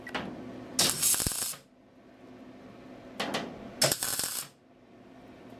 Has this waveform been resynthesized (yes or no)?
no